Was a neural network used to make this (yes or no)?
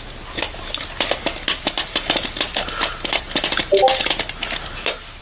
no